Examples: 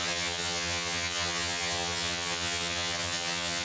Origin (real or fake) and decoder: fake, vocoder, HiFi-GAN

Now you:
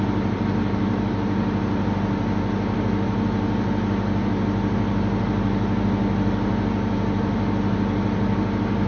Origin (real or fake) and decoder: real